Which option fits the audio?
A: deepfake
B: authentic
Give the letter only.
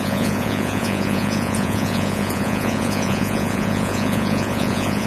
A